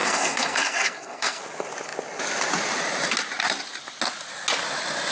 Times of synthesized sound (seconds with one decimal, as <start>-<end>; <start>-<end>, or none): 0.0-1.4